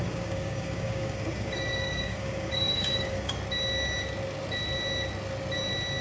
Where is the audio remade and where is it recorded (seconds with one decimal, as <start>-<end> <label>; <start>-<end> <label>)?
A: 0.0-3.3 remade; 3.3-6.0 recorded